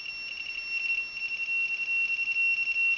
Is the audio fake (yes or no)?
no